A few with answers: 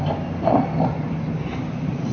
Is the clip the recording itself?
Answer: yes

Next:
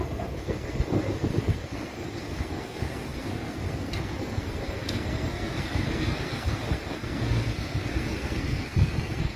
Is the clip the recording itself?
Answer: no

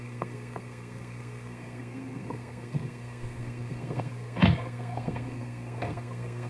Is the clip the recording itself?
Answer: no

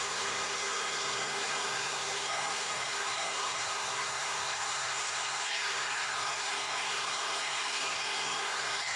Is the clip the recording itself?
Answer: no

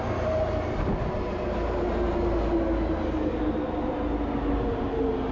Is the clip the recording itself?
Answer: yes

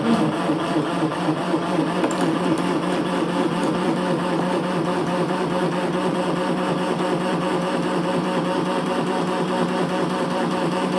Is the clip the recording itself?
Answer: no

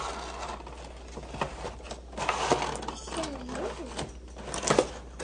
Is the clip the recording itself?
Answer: yes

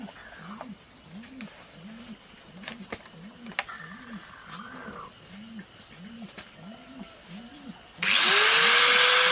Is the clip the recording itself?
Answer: yes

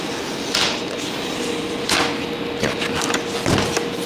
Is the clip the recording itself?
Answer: yes